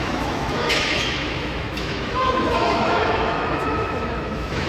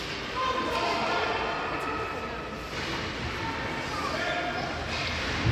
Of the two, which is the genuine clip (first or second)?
second